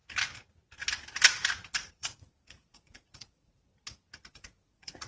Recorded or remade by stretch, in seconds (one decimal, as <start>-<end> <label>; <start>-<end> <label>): 0.0-1.9 recorded; 1.9-3.7 remade; 3.7-4.3 recorded; 4.3-5.1 remade